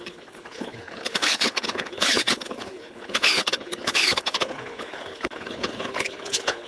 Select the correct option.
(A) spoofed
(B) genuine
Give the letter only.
A